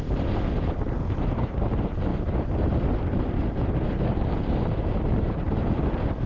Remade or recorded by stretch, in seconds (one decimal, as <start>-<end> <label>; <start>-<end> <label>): 0.0-6.3 recorded